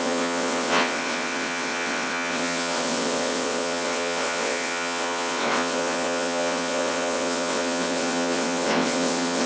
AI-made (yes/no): yes